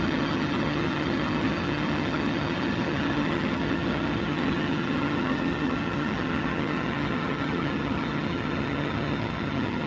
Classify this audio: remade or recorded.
remade